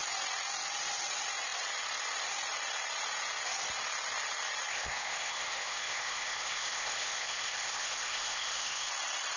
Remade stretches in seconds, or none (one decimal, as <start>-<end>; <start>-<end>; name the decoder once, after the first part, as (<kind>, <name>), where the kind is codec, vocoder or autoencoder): 4.7-8.9 (codec, ZipCodec)